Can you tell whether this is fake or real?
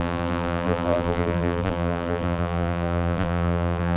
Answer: fake